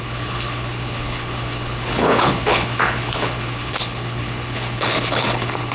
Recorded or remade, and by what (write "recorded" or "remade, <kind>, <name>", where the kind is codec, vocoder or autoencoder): remade, codec, HILCodec